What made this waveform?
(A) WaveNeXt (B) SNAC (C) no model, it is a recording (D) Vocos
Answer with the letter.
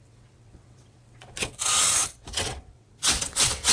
A